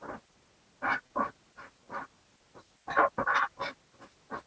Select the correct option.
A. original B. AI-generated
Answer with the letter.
A